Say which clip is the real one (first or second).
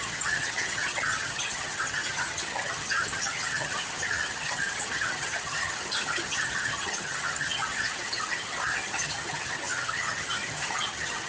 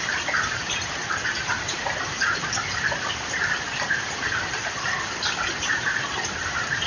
second